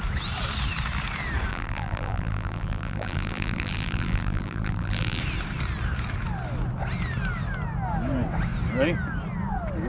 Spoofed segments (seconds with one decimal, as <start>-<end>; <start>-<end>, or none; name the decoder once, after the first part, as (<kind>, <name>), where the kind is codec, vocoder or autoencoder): 1.5-5.2 (vocoder, BigVGAN v2)